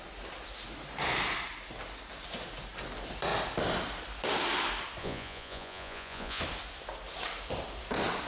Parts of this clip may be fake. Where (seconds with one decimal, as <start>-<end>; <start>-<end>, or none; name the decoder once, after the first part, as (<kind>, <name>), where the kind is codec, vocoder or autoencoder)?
5.0-6.4 (vocoder, Vocos)